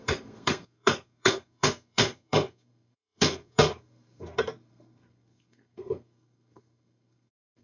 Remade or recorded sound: remade